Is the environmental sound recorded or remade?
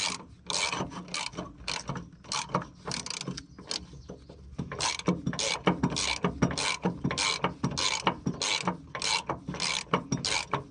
recorded